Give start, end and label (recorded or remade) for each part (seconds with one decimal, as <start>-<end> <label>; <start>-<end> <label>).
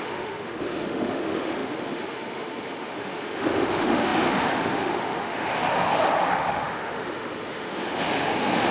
0.0-8.7 remade